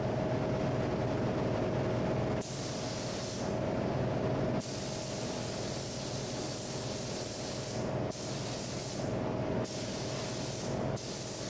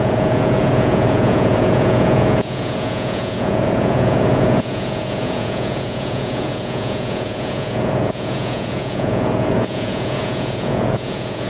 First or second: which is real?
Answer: first